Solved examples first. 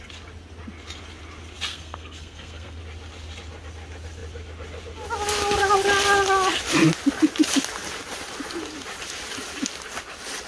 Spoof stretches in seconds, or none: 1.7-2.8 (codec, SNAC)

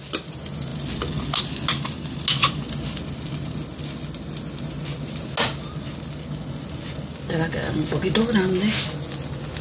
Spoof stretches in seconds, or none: none

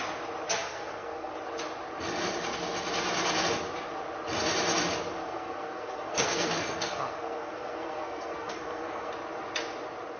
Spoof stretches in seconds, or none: 0.6-1.3 (codec, SNAC); 5.2-9.1